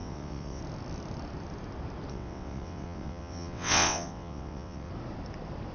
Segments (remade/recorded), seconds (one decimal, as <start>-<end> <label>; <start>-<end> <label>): 0.0-0.6 remade; 0.6-2.1 recorded; 2.1-4.9 remade; 4.9-5.7 recorded